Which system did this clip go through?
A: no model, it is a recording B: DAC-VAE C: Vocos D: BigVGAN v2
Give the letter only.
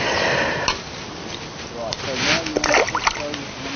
A